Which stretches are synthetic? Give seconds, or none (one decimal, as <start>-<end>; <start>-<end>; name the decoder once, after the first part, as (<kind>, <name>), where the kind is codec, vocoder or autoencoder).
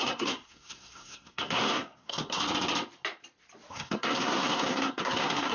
0.0-2.4 (codec, SNAC); 3.7-5.5